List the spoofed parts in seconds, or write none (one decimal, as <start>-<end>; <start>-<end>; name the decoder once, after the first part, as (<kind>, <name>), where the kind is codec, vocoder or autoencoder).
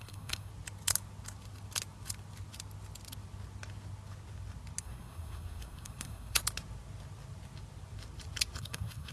0.0-0.5 (codec, SNAC); 4.8-6.4; 8.6-9.1